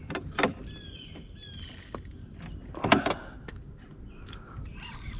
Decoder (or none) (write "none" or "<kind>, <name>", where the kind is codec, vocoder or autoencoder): none